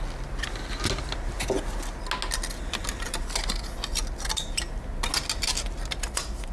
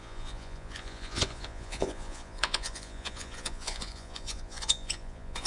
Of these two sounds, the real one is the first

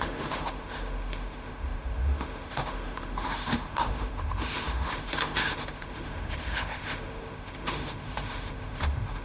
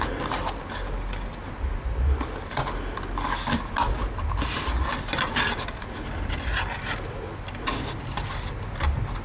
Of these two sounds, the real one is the second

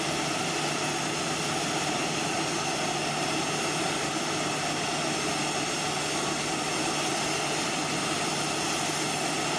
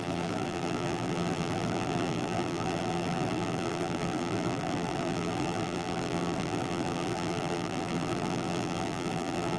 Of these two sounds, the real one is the first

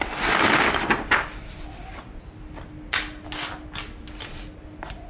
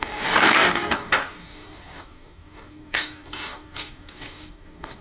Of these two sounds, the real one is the first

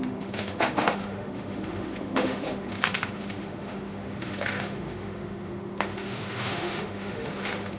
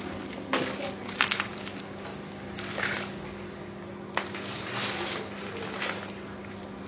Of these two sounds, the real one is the second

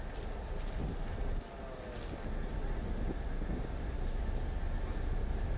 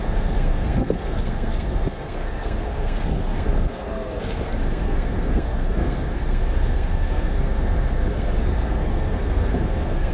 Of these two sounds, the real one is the first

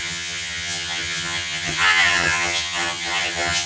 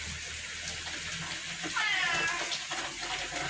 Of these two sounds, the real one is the second